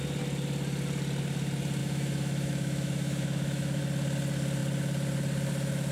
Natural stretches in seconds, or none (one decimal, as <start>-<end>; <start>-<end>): 0.0-1.8; 3.8-5.9